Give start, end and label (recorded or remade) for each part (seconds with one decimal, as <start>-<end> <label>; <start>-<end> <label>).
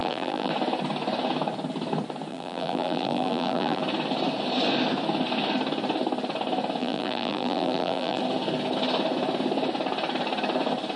0.0-0.5 remade; 0.5-2.3 recorded; 2.3-3.8 remade; 3.8-6.8 recorded; 6.8-8.2 remade; 8.2-11.0 recorded